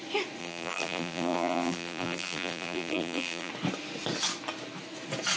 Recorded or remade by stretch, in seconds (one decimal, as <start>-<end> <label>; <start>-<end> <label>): 0.0-0.4 recorded; 0.4-3.5 remade; 3.5-5.4 recorded